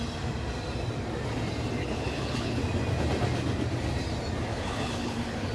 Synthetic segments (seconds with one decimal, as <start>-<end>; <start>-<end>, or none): 1.8-2.6; 4.5-5.5